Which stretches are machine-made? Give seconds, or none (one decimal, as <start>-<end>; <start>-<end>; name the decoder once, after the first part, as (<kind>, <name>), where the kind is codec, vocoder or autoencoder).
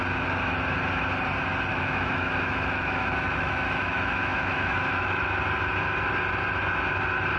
1.7-5.3 (autoencoder, DAC-VAE)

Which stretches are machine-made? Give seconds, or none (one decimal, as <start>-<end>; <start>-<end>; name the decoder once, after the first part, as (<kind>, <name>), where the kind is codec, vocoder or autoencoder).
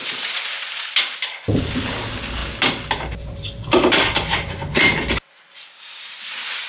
none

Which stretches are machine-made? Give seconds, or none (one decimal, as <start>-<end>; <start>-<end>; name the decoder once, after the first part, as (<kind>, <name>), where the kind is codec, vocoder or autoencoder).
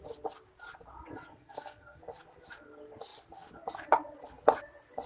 1.3-2.0 (codec, SNAC)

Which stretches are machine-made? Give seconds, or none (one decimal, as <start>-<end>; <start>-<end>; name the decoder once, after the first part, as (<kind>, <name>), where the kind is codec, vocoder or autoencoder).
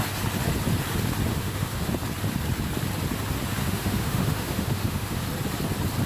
1.3-1.9 (autoencoder, DAC-VAE); 3.6-5.2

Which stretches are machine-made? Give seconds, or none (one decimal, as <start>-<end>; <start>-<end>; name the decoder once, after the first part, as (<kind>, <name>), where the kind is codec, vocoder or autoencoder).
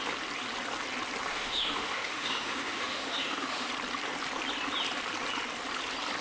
1.3-3.7 (autoencoder, DAC-VAE)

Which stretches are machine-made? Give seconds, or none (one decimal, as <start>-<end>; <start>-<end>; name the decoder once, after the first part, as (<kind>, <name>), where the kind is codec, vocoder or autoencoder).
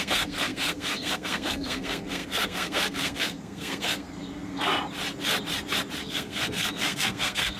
0.0-4.7 (codec, SNAC); 6.0-7.6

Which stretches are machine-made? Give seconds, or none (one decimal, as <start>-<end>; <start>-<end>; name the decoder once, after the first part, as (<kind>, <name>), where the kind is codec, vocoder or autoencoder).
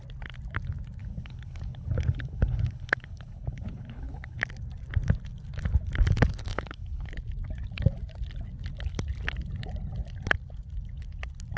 1.0-4.4 (codec, HILCodec); 6.5-7.1